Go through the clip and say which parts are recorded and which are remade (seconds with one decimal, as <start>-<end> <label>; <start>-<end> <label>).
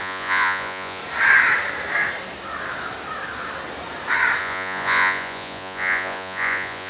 0.0-1.0 remade; 1.0-4.4 recorded; 4.4-6.9 remade